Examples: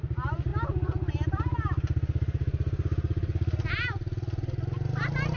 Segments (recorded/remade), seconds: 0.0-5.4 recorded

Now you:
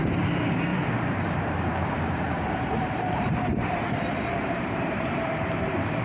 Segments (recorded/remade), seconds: 0.0-6.0 remade

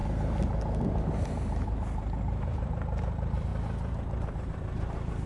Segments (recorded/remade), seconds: 0.0-1.3 recorded; 1.3-3.5 remade; 3.5-4.3 recorded; 4.3-5.3 remade

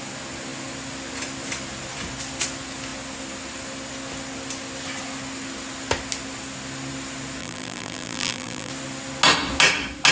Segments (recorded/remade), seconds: 0.0-7.4 recorded; 7.4-8.7 remade; 8.7-10.1 recorded

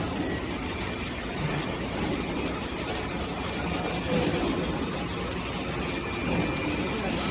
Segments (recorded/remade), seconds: 0.0-7.3 recorded

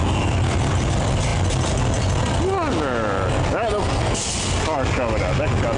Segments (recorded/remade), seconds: 0.0-5.8 recorded

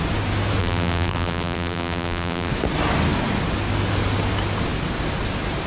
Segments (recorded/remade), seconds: 0.0-0.6 recorded; 0.6-2.5 remade; 2.5-5.7 recorded

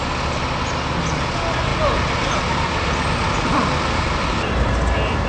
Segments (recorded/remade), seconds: 0.0-1.7 recorded; 1.7-4.5 remade; 4.5-5.3 recorded